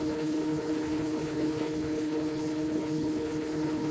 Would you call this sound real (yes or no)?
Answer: no